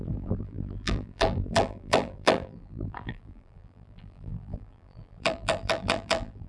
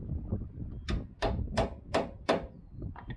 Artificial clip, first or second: first